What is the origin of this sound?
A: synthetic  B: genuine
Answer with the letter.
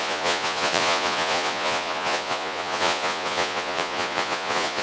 A